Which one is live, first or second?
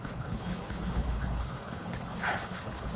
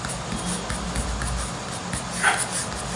second